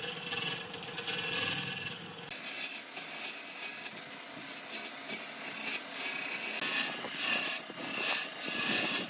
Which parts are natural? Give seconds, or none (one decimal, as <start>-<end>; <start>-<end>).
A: 0.0-9.1